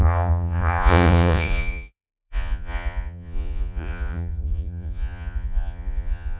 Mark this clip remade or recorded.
remade